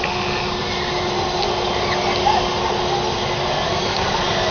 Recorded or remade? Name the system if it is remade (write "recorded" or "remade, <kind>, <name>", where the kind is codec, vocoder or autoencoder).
recorded